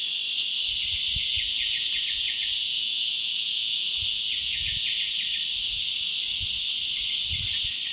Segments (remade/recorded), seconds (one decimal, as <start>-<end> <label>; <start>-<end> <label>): 0.0-1.3 recorded; 1.3-5.2 remade; 5.2-7.9 recorded